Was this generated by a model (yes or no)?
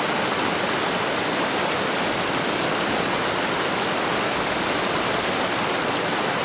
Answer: no